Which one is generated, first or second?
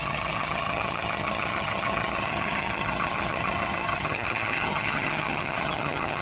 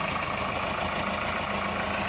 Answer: first